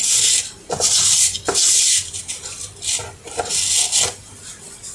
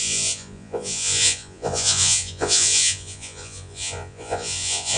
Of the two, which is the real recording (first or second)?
first